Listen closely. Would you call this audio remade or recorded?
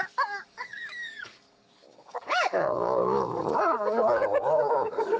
remade